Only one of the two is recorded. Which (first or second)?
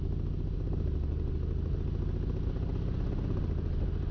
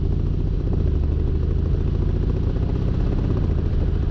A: first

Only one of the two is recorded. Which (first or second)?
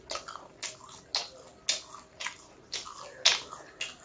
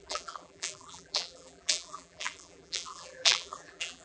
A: first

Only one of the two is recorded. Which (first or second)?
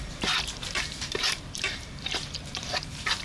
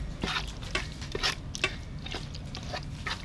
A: second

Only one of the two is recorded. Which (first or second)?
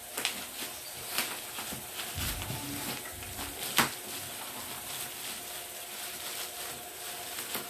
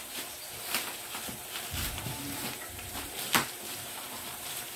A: first